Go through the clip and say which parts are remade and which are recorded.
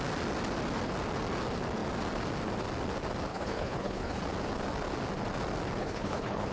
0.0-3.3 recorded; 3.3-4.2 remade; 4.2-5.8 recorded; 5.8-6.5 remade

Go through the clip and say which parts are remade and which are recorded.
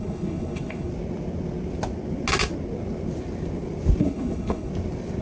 0.0-0.9 remade; 0.9-4.0 recorded; 4.0-4.7 remade; 4.7-5.2 recorded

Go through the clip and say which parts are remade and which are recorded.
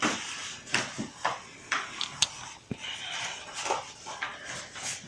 0.0-5.1 recorded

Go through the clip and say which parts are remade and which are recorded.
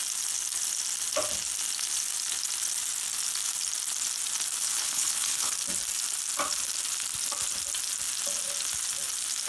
0.0-4.6 recorded; 4.6-5.5 remade; 5.5-9.5 recorded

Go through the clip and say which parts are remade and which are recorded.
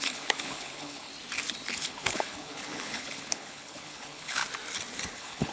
0.0-1.1 remade; 1.1-1.7 recorded; 1.7-4.4 remade; 4.4-5.1 recorded; 5.1-5.5 remade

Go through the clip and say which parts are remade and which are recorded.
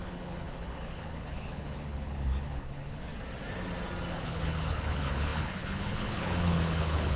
0.0-3.1 remade; 3.1-4.1 recorded; 4.1-7.2 remade